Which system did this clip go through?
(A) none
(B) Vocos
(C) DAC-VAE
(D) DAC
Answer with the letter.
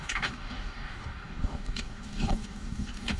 D